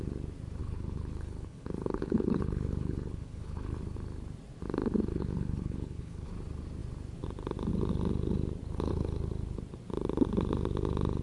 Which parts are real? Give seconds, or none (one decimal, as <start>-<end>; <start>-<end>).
0.0-0.6; 3.8-5.1; 6.3-11.2